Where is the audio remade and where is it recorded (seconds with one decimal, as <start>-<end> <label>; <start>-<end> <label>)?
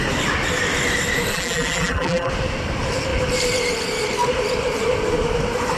0.0-1.3 recorded; 1.3-2.3 remade; 2.3-5.8 recorded